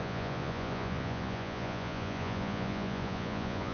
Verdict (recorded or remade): remade